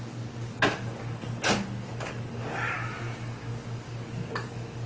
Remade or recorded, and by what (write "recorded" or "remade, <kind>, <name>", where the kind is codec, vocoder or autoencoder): remade, codec, DAC